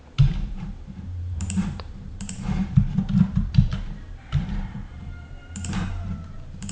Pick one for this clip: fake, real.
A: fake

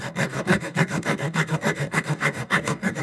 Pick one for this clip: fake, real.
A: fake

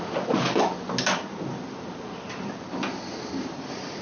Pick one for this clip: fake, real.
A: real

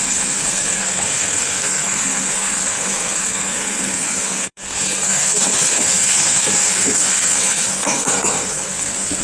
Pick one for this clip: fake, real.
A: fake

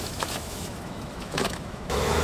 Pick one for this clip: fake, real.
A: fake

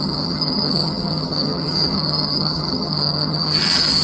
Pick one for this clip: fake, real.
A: fake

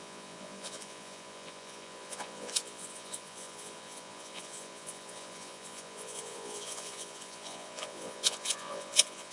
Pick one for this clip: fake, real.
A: fake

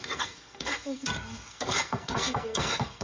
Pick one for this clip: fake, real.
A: fake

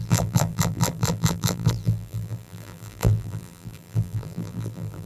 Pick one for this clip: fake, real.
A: fake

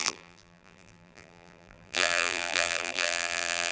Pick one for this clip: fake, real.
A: fake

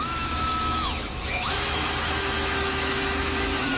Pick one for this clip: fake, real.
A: fake